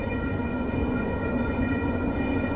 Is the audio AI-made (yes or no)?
yes